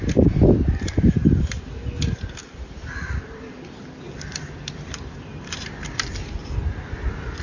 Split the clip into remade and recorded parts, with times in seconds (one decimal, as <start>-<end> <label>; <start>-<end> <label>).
0.0-2.4 recorded; 2.4-6.1 remade; 6.1-7.4 recorded